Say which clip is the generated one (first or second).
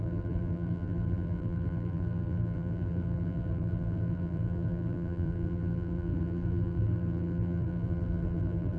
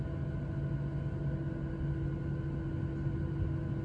first